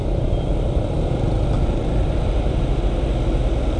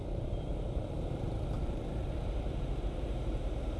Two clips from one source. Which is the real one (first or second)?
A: first